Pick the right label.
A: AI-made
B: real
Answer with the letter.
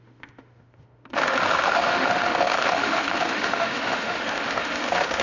A